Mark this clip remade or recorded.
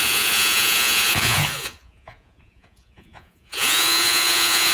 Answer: remade